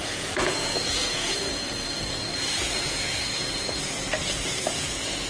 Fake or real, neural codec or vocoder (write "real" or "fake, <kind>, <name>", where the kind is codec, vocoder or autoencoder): fake, vocoder, Vocos